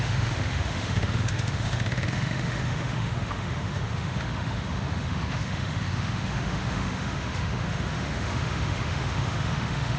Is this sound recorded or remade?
remade